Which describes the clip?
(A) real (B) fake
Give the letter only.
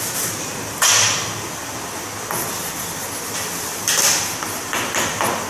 A